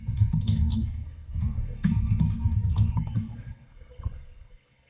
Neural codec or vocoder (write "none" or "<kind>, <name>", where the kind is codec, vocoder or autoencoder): codec, SNAC